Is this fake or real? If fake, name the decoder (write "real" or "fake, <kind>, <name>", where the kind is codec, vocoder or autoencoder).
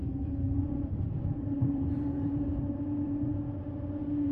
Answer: fake, vocoder, BigVGAN v2